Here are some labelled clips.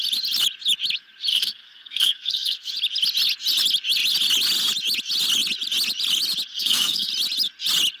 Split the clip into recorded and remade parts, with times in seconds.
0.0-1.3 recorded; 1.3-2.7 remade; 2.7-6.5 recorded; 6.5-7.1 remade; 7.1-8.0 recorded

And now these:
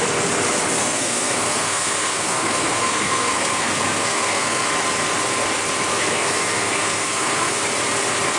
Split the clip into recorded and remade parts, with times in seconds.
0.0-0.8 recorded; 0.8-4.7 remade; 4.7-5.9 recorded; 5.9-7.6 remade; 7.6-8.4 recorded

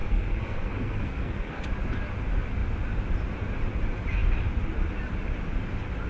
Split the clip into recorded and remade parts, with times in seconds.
0.0-1.6 remade; 1.6-6.1 recorded

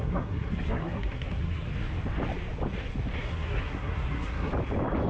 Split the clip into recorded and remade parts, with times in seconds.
0.0-1.7 remade; 1.7-3.2 recorded; 3.2-4.5 remade; 4.5-5.1 recorded

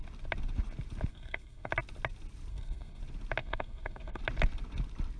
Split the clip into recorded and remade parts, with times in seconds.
0.0-1.1 recorded; 1.1-1.7 remade; 1.7-2.5 recorded; 2.5-3.0 remade; 3.0-3.4 recorded; 3.4-4.2 remade; 4.2-5.2 recorded

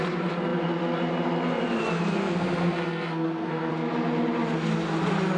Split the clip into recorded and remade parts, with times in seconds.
0.0-2.2 recorded; 2.2-3.7 remade; 3.7-5.4 recorded

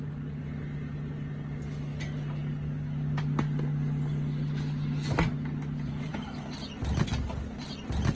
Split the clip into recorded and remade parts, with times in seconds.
0.0-8.2 recorded